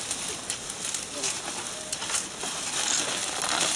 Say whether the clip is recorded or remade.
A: recorded